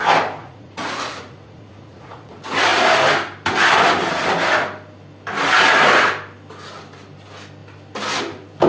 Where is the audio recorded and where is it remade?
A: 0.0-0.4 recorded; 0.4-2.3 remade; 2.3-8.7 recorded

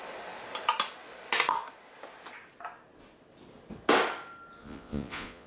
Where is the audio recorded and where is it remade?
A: 0.0-4.6 recorded; 4.6-5.5 remade

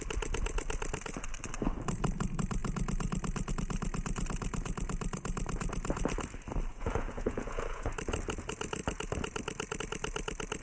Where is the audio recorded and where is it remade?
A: 0.0-6.7 recorded; 6.7-7.9 remade; 7.9-10.6 recorded

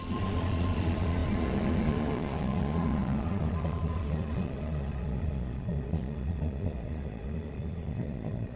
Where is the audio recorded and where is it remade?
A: 0.0-8.6 remade

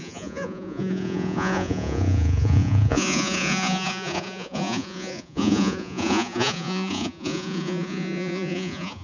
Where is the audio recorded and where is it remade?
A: 0.0-9.0 remade